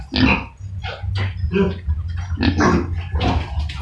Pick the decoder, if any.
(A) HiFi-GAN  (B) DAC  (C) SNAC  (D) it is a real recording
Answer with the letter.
D